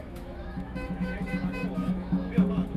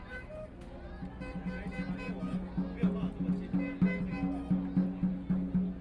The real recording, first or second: second